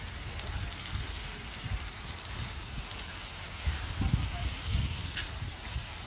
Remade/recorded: recorded